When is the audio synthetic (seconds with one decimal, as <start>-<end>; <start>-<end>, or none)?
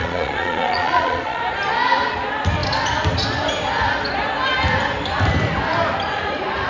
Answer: 0.0-1.4